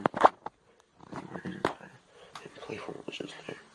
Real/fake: real